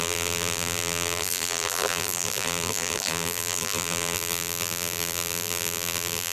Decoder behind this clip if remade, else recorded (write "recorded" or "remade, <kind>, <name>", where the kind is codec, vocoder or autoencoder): remade, vocoder, BigVGAN v2